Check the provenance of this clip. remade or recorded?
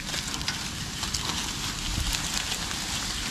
recorded